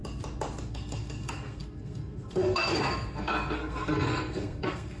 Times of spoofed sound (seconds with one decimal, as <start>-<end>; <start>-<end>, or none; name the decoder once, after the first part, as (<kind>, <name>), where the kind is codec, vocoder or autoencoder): 0.7-5.0 (codec, SNAC)